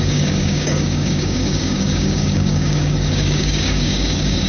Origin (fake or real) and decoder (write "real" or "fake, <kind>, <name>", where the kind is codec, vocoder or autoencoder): fake, codec, DAC